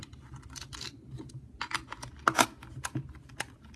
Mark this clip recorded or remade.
recorded